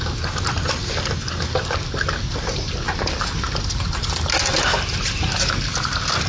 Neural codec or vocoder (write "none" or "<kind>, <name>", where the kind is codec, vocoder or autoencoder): none